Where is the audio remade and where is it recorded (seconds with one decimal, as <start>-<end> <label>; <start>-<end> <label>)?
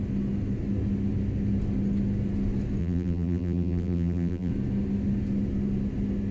0.0-2.8 recorded; 2.8-4.5 remade; 4.5-6.3 recorded